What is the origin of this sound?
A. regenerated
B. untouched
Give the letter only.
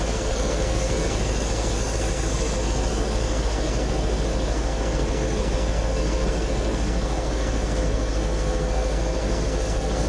A